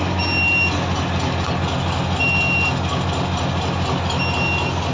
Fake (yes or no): no